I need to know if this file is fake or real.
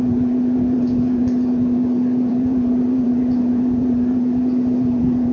fake